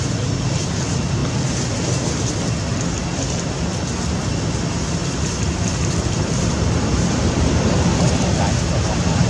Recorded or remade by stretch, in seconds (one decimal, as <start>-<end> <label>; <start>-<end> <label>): 0.0-5.0 recorded; 5.0-8.4 remade; 8.4-9.3 recorded